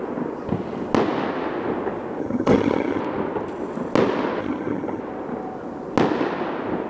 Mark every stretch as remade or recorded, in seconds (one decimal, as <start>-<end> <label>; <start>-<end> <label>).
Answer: 0.0-2.2 recorded; 2.2-3.0 remade; 3.0-4.4 recorded; 4.4-5.0 remade; 5.0-6.9 recorded